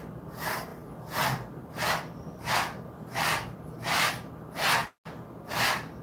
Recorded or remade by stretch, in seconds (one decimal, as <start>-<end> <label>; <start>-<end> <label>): 0.0-6.0 recorded